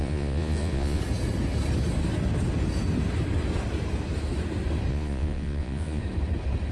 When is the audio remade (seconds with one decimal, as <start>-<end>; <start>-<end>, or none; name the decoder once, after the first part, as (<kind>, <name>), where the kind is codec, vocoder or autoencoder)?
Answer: 0.0-1.0 (vocoder, Vocos); 4.9-6.0